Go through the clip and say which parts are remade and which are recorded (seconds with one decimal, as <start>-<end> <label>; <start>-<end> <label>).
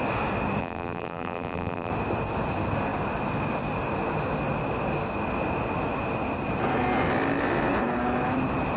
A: 0.0-0.6 recorded; 0.6-1.9 remade; 1.9-8.8 recorded